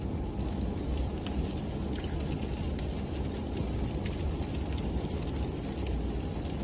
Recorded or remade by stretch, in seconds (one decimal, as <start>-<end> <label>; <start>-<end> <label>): 0.0-6.6 recorded